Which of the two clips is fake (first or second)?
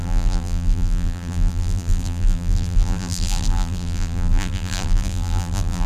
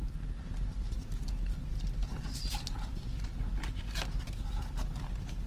first